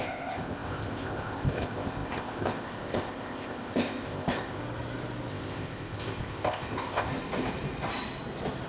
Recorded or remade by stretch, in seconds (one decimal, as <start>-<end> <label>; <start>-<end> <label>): 0.0-4.6 remade; 4.6-5.3 recorded; 5.3-7.1 remade; 7.1-8.7 recorded